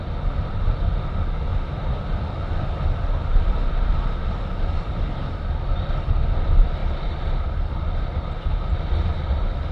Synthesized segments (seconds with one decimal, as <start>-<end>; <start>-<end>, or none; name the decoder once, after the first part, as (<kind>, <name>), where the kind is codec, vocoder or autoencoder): none